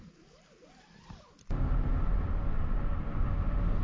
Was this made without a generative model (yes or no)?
yes